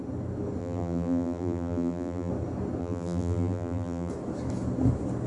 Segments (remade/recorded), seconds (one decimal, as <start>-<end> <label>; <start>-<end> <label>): 0.0-0.6 recorded; 0.6-2.3 remade; 2.3-2.8 recorded; 2.8-4.1 remade; 4.1-5.3 recorded